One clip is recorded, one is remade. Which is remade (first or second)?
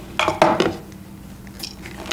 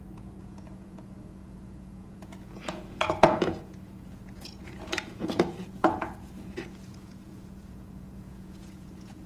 second